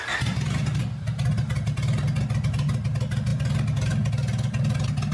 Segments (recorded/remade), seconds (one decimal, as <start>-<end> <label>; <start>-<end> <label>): 0.0-5.1 recorded

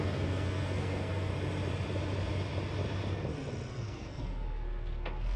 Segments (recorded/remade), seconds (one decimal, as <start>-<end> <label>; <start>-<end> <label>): 0.0-1.3 remade; 1.3-3.7 recorded; 3.7-5.4 remade

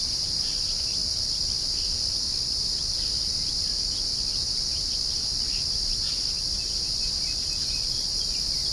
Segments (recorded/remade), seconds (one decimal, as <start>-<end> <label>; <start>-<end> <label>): 0.0-8.7 recorded

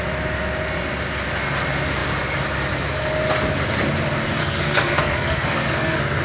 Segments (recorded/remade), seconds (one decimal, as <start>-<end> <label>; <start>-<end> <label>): 0.0-4.4 recorded; 4.4-6.2 remade